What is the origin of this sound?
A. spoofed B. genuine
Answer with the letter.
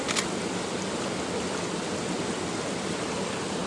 B